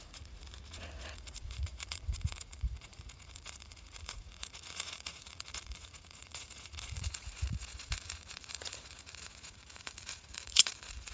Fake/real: fake